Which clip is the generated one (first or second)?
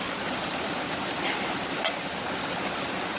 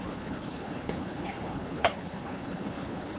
second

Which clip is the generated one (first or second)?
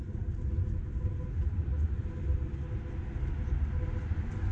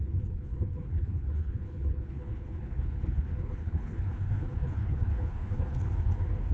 second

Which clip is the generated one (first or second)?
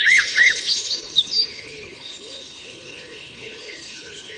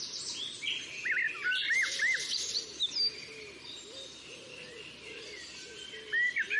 first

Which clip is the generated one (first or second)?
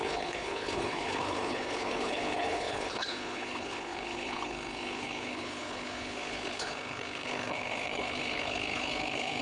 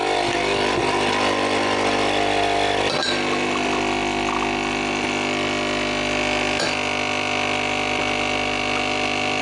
first